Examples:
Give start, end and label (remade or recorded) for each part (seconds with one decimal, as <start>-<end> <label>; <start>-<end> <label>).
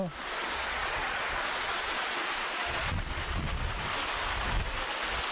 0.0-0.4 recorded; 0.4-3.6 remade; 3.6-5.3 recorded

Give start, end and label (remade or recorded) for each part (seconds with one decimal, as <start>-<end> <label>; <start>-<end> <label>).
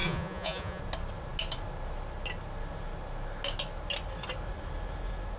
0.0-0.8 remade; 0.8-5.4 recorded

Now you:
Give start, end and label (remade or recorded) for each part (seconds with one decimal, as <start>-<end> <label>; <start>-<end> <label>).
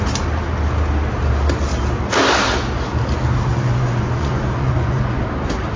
0.0-3.5 recorded; 3.5-5.2 remade; 5.2-5.8 recorded